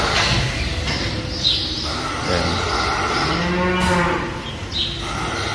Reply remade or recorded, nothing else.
recorded